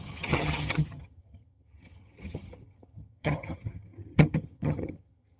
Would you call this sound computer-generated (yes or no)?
yes